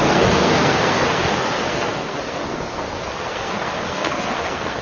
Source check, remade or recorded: remade